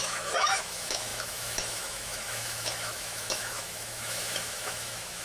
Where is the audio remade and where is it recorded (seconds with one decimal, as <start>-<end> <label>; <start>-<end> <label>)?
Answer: 0.0-5.2 remade